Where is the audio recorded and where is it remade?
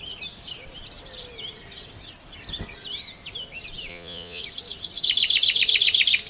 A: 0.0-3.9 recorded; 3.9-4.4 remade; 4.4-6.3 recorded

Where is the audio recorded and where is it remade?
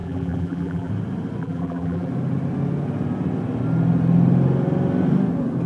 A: 0.0-0.9 remade; 0.9-1.4 recorded; 1.4-2.1 remade; 2.1-5.7 recorded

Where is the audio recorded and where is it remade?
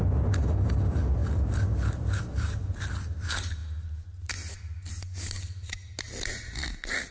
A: 0.0-7.1 recorded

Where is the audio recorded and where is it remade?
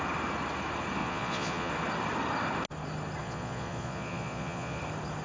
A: 0.0-1.0 recorded; 1.0-1.7 remade; 1.7-3.2 recorded; 3.2-4.8 remade; 4.8-5.2 recorded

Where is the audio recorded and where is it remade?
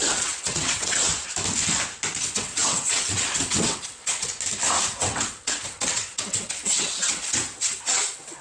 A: 0.0-1.1 remade; 1.1-2.2 recorded; 2.2-4.3 remade; 4.3-4.9 recorded; 4.9-8.4 remade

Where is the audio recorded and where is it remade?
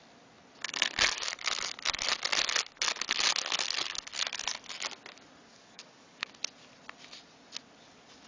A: 0.0-5.5 recorded; 5.5-6.3 remade; 6.3-8.3 recorded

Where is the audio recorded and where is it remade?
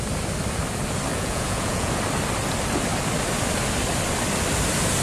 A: 0.0-1.1 recorded; 1.1-1.9 remade; 1.9-5.0 recorded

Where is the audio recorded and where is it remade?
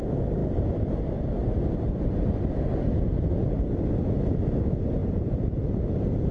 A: 0.0-0.4 recorded; 0.4-1.0 remade; 1.0-1.4 recorded; 1.4-2.0 remade; 2.0-6.3 recorded